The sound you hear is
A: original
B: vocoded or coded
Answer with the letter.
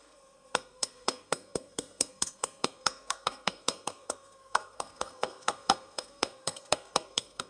B